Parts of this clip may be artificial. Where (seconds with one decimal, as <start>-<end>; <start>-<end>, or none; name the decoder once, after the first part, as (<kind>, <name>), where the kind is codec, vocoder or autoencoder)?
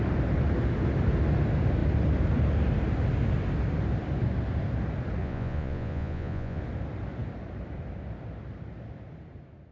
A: 5.2-6.6 (vocoder, Vocos)